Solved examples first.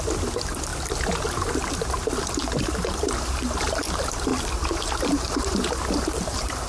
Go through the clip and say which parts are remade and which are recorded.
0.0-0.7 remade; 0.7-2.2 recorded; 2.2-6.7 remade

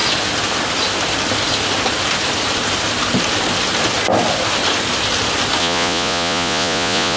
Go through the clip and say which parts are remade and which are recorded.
0.0-5.6 recorded; 5.6-7.2 remade

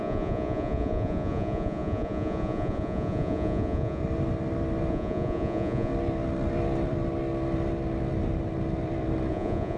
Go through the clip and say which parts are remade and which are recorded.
0.0-4.0 remade; 4.0-4.9 recorded; 4.9-5.9 remade; 5.9-9.3 recorded; 9.3-9.8 remade